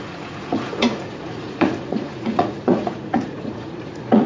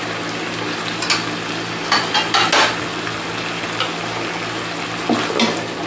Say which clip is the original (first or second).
second